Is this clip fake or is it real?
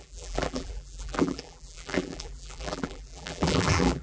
fake